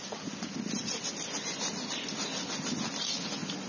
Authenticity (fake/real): real